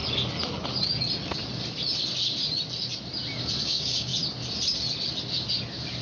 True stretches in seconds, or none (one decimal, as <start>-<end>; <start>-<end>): 0.0-3.6; 4.1-6.0